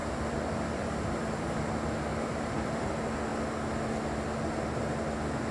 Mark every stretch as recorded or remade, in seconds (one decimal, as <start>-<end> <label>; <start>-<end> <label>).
0.0-1.7 remade; 1.7-2.1 recorded; 2.1-2.9 remade; 2.9-5.5 recorded